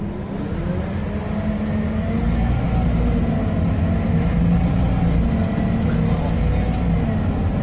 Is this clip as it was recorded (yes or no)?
yes